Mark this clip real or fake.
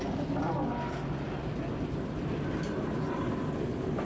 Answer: real